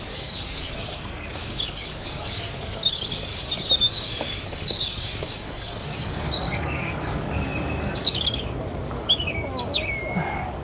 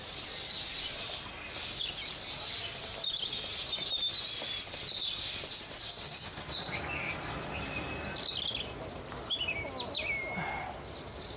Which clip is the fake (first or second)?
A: first